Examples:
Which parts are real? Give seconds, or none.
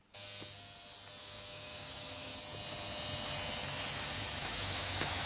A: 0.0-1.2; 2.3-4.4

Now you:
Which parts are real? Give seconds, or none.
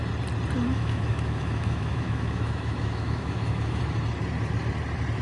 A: 0.0-0.7; 3.8-5.2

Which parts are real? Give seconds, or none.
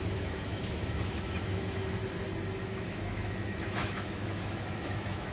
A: 2.0-2.6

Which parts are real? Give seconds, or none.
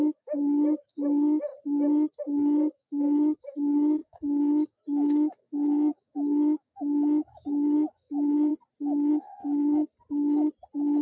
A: 1.5-2.2; 8.5-9.1; 9.8-11.0